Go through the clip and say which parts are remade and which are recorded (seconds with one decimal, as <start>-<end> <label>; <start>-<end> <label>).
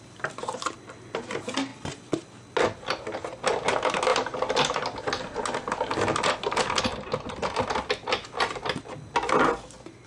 0.0-10.1 recorded